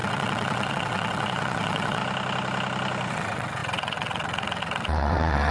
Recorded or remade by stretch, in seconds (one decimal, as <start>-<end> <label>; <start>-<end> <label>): 0.0-2.0 remade; 2.0-3.1 recorded; 3.1-5.5 remade